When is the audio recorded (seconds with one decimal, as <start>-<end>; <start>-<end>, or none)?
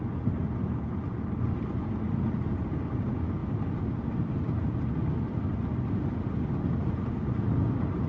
0.0-8.1